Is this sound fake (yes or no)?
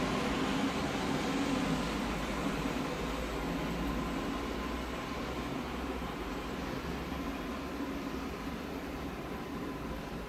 no